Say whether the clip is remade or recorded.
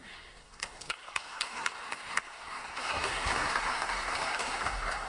remade